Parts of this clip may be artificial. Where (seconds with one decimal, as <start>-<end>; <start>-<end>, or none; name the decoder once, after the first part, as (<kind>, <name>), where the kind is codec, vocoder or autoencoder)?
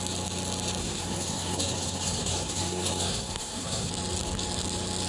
0.8-3.9 (codec, SNAC)